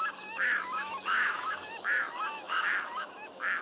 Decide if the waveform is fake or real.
fake